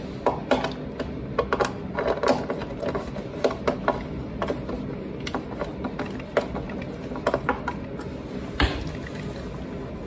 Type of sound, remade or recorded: recorded